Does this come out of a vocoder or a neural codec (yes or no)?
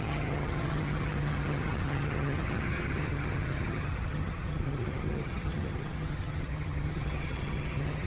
yes